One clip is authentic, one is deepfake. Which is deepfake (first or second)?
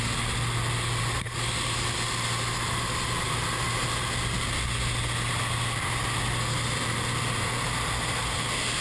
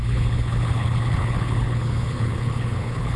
second